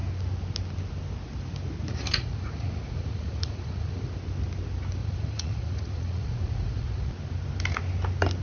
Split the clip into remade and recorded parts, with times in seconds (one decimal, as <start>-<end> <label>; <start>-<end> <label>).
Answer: 0.0-1.9 recorded; 1.9-4.1 remade; 4.1-5.0 recorded; 5.0-7.1 remade; 7.1-8.4 recorded